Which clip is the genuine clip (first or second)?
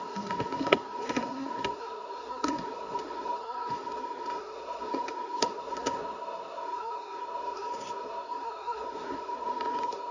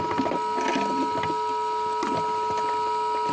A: second